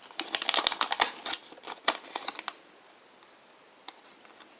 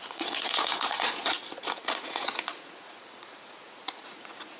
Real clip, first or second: first